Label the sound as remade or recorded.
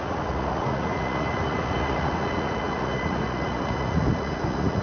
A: remade